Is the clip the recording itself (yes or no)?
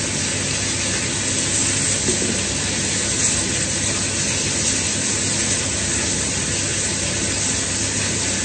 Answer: yes